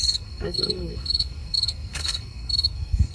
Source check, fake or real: fake